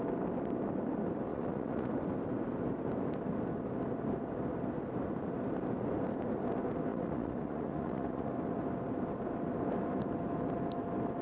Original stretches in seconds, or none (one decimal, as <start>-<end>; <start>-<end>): 0.0-1.3; 1.9-6.9; 8.3-11.2